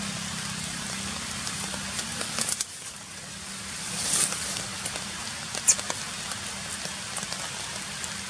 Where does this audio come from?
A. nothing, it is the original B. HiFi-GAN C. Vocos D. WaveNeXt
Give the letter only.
A